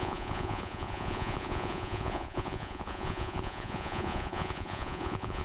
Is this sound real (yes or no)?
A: no